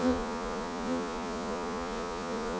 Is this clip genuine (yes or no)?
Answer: no